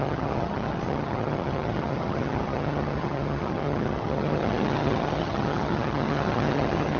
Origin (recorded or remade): remade